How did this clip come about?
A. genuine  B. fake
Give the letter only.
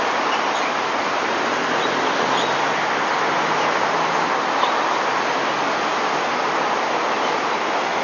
A